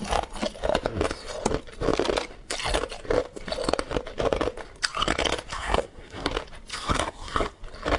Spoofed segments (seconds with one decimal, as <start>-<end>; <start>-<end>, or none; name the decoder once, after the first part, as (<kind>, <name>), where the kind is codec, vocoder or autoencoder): 5.5-6.3 (codec, SNAC); 6.7-7.6